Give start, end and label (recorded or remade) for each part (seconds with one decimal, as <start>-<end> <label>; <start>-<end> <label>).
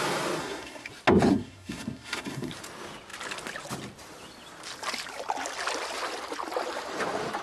0.0-0.4 recorded; 0.4-0.9 remade; 0.9-1.3 recorded; 1.3-2.5 remade; 2.5-7.4 recorded